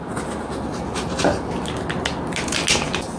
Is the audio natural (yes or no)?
yes